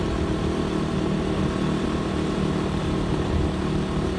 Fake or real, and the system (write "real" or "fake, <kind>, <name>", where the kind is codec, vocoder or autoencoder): real